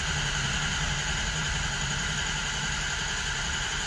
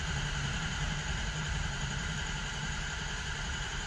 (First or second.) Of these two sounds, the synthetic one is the second